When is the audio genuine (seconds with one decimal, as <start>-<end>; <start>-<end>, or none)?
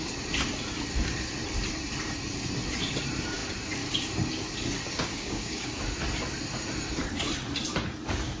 0.0-4.9; 5.8-8.4